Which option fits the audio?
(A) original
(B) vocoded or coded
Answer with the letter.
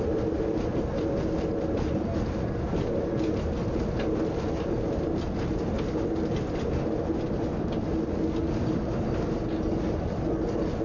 A